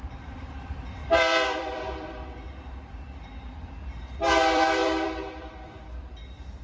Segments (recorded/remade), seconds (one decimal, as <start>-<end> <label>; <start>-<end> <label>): 0.0-6.6 remade